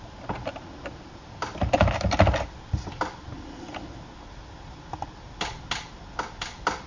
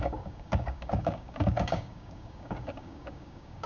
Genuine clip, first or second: first